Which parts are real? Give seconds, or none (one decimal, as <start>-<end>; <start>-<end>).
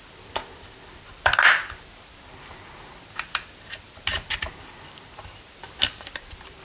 0.0-6.6